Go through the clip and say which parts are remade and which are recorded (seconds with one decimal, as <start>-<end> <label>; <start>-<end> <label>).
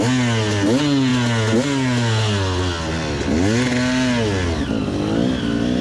0.0-5.8 recorded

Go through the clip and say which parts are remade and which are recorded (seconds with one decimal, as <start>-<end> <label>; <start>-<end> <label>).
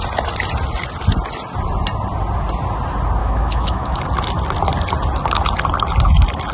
0.0-3.2 recorded; 3.2-4.0 remade; 4.0-6.5 recorded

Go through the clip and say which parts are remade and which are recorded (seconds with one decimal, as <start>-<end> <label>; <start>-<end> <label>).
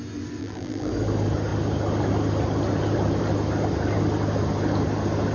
0.0-0.4 recorded; 0.4-0.9 remade; 0.9-5.3 recorded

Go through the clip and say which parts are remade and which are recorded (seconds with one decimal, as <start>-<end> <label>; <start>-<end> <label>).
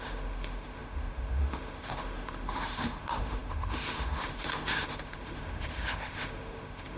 0.0-7.0 remade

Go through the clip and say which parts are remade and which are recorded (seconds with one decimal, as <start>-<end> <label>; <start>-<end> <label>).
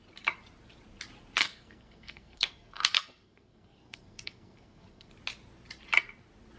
0.0-1.4 recorded; 1.4-5.1 remade; 5.1-6.6 recorded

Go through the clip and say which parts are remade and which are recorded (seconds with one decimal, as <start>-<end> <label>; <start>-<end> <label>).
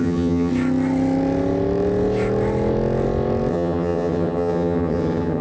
0.0-0.5 remade; 0.5-3.5 recorded; 3.5-5.4 remade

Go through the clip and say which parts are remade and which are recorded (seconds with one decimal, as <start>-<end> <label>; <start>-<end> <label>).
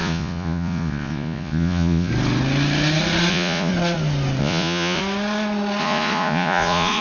0.0-2.1 remade; 2.1-3.3 recorded; 3.3-3.7 remade; 3.7-4.4 recorded; 4.4-5.0 remade; 5.0-5.8 recorded; 5.8-7.0 remade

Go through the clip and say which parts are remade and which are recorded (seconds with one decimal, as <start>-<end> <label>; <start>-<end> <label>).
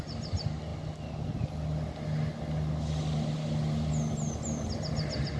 0.0-5.4 recorded